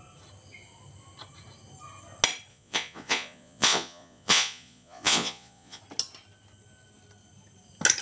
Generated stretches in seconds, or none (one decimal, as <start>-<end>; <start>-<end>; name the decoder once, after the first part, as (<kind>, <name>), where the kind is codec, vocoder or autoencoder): 2.5-5.8 (vocoder, Vocos)